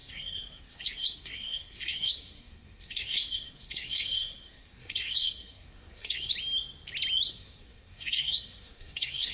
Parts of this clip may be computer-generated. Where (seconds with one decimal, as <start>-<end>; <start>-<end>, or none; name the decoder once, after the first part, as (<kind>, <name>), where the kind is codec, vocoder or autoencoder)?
0.0-6.3 (codec, SNAC); 7.3-9.3